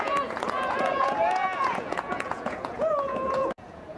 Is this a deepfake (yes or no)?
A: yes